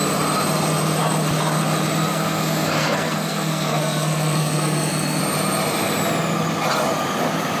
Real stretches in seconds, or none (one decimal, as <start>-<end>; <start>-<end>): 0.0-2.1; 5.2-7.6